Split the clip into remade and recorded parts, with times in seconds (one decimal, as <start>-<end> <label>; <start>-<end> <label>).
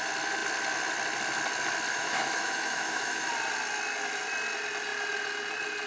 0.0-1.9 recorded; 1.9-3.3 remade; 3.3-5.9 recorded